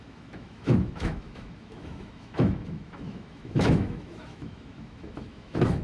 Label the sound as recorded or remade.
remade